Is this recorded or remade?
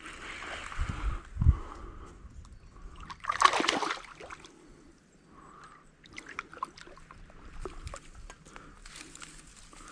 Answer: recorded